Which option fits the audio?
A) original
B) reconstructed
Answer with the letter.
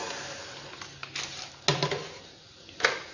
A